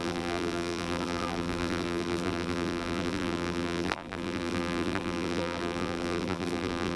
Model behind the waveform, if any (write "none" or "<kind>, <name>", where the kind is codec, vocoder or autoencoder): vocoder, BigVGAN v2